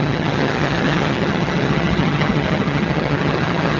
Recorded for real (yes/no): no